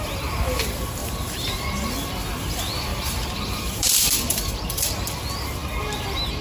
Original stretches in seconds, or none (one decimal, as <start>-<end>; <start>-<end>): 0.0-1.0; 1.6-2.9; 4.9-6.4